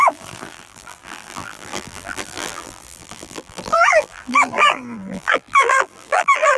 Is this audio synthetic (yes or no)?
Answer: yes